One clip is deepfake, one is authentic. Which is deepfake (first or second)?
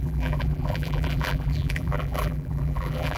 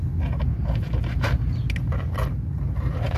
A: first